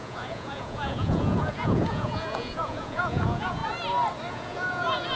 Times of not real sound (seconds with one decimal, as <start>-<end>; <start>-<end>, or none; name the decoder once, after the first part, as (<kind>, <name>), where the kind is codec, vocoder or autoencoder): 0.0-3.6 (vocoder, Vocos); 4.3-5.2